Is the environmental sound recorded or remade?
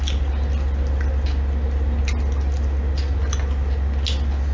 recorded